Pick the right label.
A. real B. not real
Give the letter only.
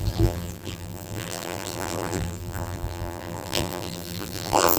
B